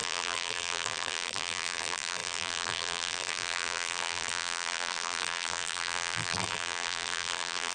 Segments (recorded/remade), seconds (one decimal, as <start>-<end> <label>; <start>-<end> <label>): 0.0-7.7 remade